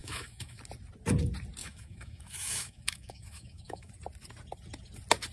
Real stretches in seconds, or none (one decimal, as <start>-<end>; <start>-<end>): 0.6-1.6; 3.9-5.3